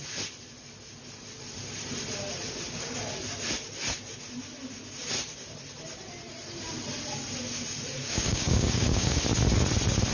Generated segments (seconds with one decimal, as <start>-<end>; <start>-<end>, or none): 8.0-9.2